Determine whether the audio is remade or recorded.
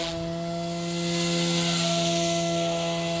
recorded